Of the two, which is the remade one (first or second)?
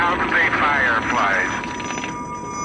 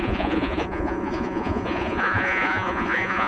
second